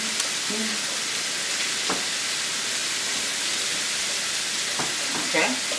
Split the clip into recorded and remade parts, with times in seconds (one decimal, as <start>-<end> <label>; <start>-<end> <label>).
0.0-2.8 recorded; 2.8-3.5 remade; 3.5-5.8 recorded